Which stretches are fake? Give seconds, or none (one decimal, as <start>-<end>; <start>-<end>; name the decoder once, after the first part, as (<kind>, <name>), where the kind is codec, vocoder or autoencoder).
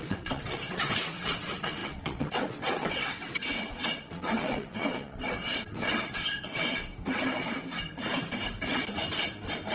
0.0-6.9 (vocoder, WaveNeXt)